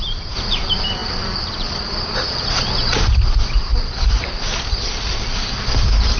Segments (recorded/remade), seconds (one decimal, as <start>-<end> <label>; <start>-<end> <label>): 0.0-6.2 remade